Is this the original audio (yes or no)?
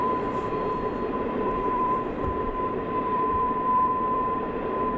no